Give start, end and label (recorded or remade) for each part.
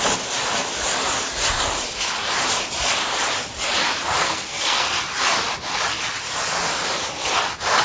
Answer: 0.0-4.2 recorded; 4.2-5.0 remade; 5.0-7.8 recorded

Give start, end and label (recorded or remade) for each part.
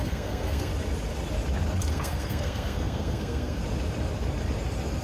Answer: 0.0-0.7 remade; 0.7-1.9 recorded; 1.9-3.6 remade; 3.6-5.0 recorded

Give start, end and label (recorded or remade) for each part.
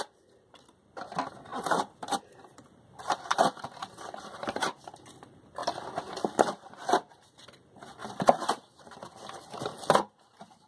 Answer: 0.0-1.5 recorded; 1.5-4.2 remade; 4.2-10.7 recorded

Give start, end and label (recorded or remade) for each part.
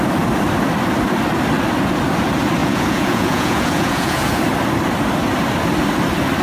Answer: 0.0-2.6 recorded; 2.6-4.4 remade; 4.4-6.4 recorded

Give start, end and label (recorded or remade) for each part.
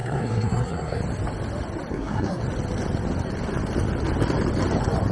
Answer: 0.0-1.0 remade; 1.0-1.9 recorded; 1.9-2.4 remade; 2.4-5.1 recorded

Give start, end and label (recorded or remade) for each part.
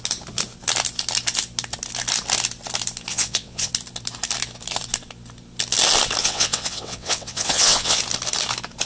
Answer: 0.0-3.1 recorded; 3.1-3.7 remade; 3.7-6.2 recorded; 6.2-8.0 remade; 8.0-8.9 recorded